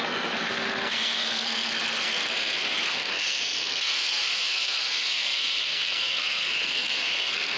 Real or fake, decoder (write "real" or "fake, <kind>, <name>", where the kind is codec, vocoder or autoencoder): fake, codec, SNAC